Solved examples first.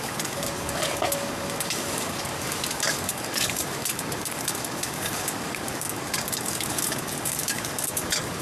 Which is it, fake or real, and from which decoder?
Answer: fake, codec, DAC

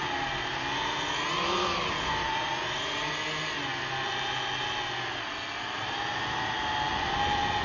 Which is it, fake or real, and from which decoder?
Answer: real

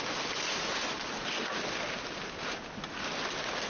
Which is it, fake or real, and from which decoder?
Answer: real